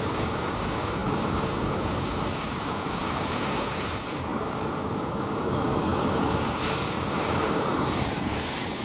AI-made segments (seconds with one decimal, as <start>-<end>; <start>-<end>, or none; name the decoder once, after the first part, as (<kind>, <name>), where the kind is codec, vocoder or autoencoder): 0.0-8.8 (codec, DAC)